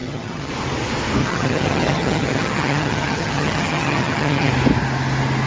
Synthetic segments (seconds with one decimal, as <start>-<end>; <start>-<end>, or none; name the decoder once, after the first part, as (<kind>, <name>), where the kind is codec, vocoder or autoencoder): 0.0-0.5 (vocoder, HiFi-GAN); 1.2-4.5